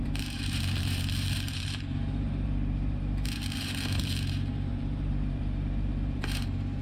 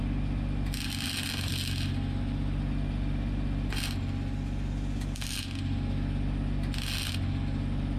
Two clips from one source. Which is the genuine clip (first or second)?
second